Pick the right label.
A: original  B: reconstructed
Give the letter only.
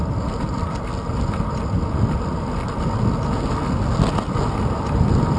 A